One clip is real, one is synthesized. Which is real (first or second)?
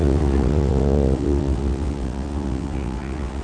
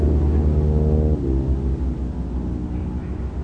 second